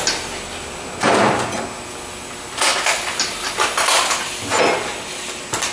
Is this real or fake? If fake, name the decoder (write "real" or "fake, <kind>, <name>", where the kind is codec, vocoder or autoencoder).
real